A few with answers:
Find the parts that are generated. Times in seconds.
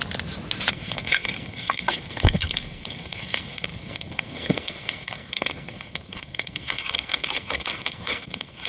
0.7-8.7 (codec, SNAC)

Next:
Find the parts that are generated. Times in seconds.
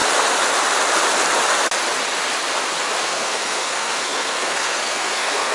3.0-5.5 (codec, SNAC)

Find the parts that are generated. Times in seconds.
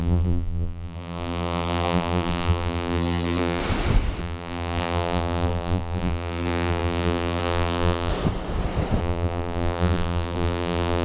0.0-3.6 (vocoder, BigVGAN v2); 4.2-8.1; 9.0-11.0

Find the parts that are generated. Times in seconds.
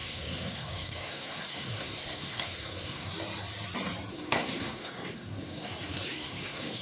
0.0-3.1 (codec, SNAC); 4.1-6.8